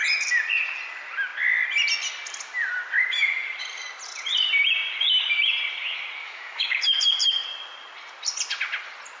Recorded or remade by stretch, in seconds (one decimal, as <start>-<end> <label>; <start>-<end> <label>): 0.0-6.2 recorded; 6.2-6.8 remade; 6.8-9.2 recorded